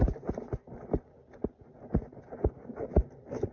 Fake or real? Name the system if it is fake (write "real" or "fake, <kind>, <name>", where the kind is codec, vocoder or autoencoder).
real